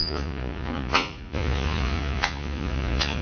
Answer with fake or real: fake